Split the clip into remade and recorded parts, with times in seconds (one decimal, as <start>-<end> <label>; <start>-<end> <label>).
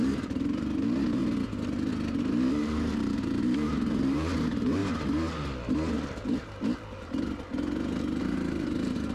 0.0-1.2 remade; 1.2-2.3 recorded; 2.3-4.8 remade; 4.8-8.2 recorded; 8.2-9.1 remade